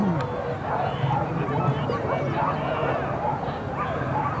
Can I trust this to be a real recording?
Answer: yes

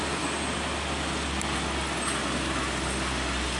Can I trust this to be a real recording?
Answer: yes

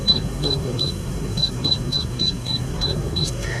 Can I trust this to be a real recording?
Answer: no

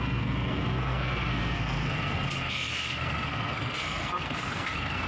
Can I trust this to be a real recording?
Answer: no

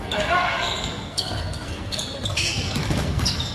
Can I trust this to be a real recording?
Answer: no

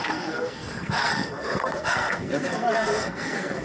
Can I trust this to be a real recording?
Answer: no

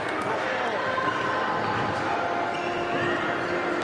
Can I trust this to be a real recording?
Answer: yes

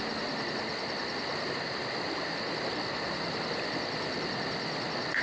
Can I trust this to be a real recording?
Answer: yes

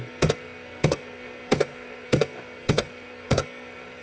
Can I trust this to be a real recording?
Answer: no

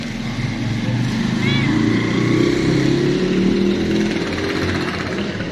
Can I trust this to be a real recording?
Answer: yes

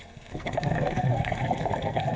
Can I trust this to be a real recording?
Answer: no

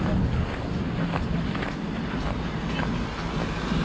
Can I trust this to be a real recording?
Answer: yes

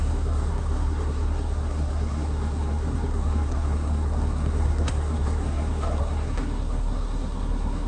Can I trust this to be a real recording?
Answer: no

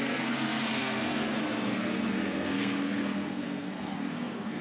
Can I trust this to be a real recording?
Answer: no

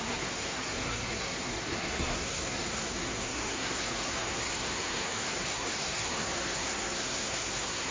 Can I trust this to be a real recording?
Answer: no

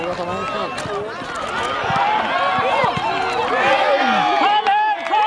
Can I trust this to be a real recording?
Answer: yes